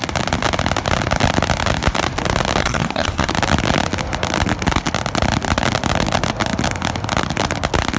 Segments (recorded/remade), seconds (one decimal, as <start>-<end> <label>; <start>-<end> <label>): 0.0-2.6 recorded; 2.6-3.3 remade; 3.3-8.0 recorded